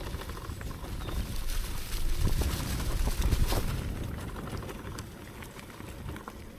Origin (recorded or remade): recorded